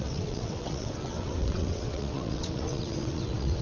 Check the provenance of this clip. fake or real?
fake